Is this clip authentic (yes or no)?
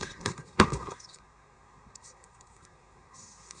no